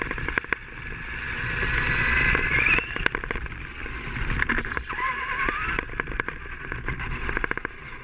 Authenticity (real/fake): real